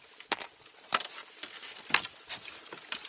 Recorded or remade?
recorded